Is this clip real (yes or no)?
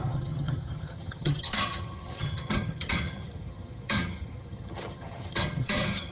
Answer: no